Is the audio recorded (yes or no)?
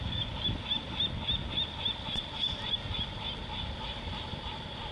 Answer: yes